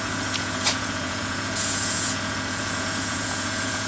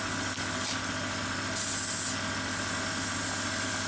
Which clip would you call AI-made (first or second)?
first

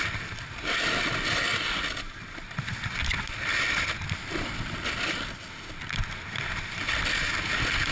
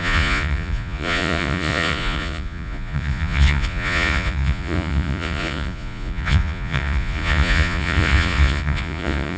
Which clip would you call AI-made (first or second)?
second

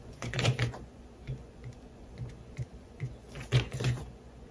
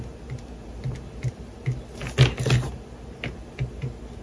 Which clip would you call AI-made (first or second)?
first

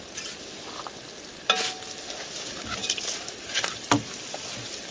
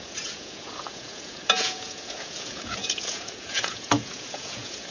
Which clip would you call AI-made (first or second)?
second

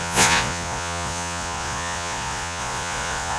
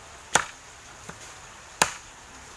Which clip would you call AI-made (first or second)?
first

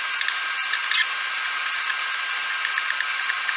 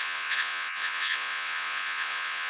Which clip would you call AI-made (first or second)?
second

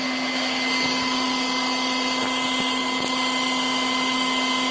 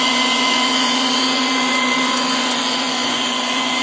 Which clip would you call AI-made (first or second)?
second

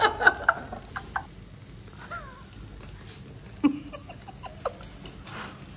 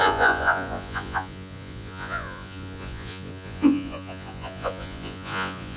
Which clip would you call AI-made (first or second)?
second